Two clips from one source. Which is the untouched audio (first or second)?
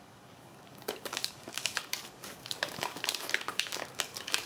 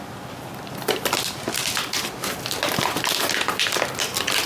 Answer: second